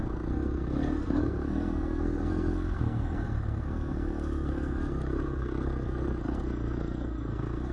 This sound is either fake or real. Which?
fake